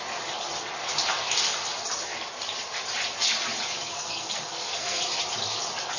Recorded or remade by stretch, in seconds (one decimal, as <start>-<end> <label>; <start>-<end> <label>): 0.0-3.9 recorded; 3.9-5.0 remade; 5.0-6.0 recorded